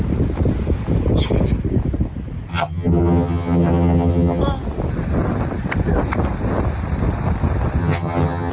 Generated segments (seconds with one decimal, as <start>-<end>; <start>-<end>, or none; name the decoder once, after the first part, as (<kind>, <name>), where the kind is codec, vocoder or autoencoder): 2.5-4.4 (vocoder, HiFi-GAN); 7.8-8.5